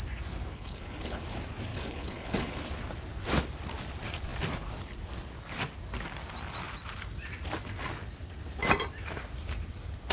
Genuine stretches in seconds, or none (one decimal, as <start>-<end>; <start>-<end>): 0.0-0.5; 1.2-1.7; 2.6-10.1